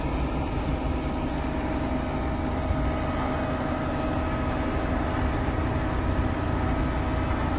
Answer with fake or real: real